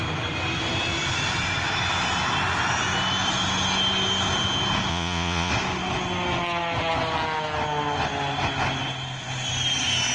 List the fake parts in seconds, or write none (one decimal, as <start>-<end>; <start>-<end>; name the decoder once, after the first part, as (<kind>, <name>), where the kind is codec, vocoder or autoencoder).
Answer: 4.9-5.5 (vocoder, Vocos)